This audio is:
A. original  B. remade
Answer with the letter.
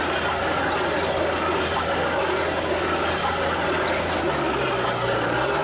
A